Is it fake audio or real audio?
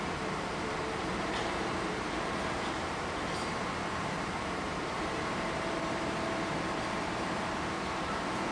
fake